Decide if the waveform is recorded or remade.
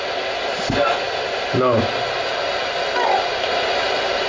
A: recorded